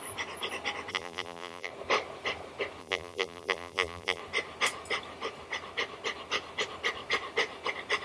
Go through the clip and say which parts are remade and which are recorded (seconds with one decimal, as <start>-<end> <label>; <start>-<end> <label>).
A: 0.0-0.9 recorded; 0.9-1.7 remade; 1.7-2.8 recorded; 2.8-4.2 remade; 4.2-8.0 recorded